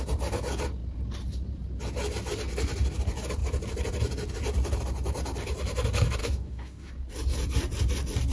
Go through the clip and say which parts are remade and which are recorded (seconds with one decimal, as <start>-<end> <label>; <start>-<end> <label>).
0.0-6.2 recorded; 6.2-6.9 remade; 6.9-8.3 recorded